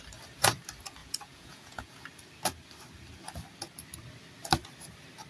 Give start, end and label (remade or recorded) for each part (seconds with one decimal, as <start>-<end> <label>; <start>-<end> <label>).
0.0-1.0 recorded; 1.0-2.0 remade; 2.0-5.3 recorded